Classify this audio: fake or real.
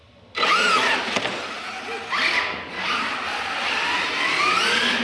real